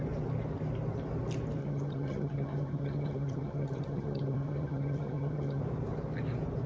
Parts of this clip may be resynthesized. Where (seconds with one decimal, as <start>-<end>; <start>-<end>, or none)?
1.6-5.6